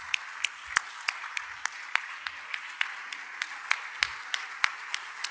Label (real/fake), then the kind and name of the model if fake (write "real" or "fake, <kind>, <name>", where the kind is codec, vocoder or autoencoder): real